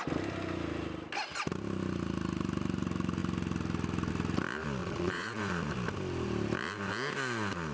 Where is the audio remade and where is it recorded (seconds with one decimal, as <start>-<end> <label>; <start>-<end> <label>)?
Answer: 0.0-4.8 recorded; 4.8-5.4 remade; 5.4-7.7 recorded